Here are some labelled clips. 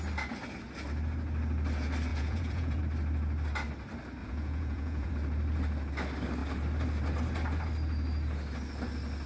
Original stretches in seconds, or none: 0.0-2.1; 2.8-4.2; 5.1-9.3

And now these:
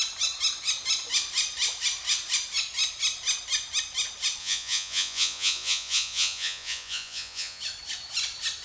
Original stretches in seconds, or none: 0.0-4.4; 7.6-8.6